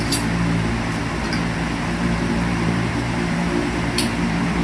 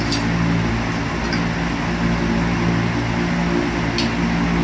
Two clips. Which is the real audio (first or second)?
second